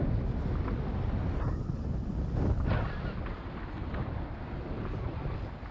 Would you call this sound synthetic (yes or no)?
no